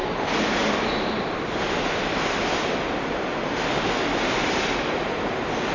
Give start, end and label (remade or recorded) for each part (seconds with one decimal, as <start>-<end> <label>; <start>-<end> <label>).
0.0-0.6 remade; 0.6-5.7 recorded